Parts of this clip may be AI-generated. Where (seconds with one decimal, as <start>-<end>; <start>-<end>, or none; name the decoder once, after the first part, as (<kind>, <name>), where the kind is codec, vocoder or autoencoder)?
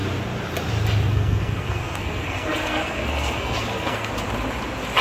1.1-4.1 (codec, SNAC)